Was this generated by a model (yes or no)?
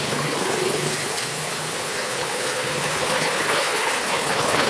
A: yes